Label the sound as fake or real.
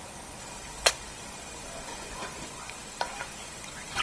fake